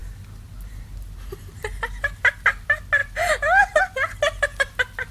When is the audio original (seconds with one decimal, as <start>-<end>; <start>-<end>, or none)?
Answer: 0.0-5.1